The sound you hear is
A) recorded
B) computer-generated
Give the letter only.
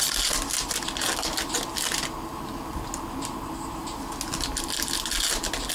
A